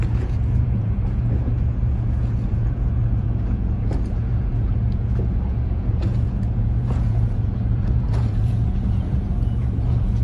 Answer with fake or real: fake